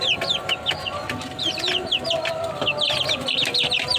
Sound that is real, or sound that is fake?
real